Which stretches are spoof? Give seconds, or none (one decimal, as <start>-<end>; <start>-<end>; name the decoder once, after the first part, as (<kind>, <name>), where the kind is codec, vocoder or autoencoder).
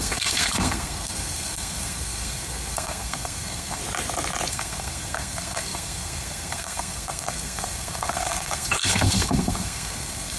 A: 0.0-3.8 (codec, SNAC); 4.5-10.4